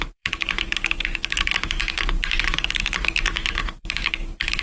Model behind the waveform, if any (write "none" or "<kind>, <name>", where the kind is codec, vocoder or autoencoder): codec, DAC